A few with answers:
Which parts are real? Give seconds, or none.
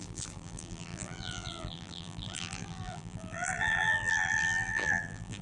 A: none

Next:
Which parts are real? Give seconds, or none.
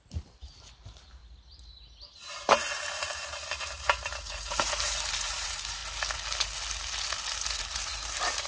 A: 1.2-2.9; 5.8-7.6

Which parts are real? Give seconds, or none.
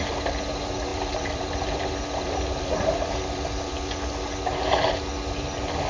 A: 0.0-0.9; 3.7-5.9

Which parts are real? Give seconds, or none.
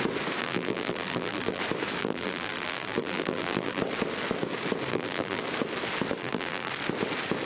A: 0.0-0.4; 1.6-2.0; 3.8-4.9; 5.4-6.2; 6.7-7.5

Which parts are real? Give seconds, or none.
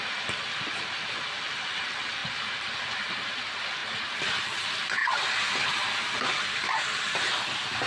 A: 0.0-2.2; 3.3-3.8; 4.4-7.9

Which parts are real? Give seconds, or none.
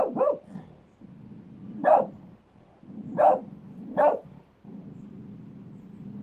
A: 0.0-1.8; 2.8-6.2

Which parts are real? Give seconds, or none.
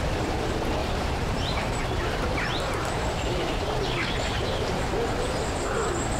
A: 0.0-0.8; 4.5-6.2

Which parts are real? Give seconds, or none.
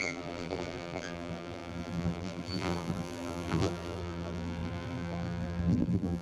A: none